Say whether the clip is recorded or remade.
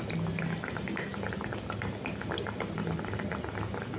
recorded